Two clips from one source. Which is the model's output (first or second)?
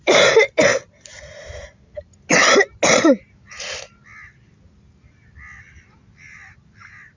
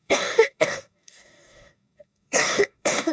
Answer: second